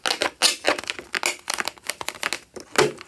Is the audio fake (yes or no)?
no